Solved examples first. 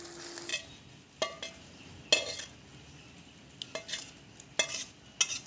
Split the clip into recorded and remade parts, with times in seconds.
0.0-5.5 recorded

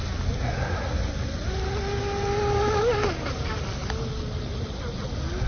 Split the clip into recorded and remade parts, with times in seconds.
0.0-5.5 recorded

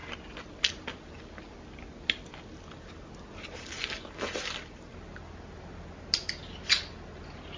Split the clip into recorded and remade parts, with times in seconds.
0.0-7.6 recorded

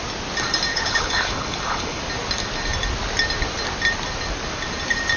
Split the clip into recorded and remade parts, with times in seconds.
0.0-0.7 recorded; 0.7-2.0 remade; 2.0-5.2 recorded